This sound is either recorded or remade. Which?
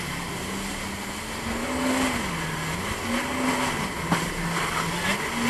recorded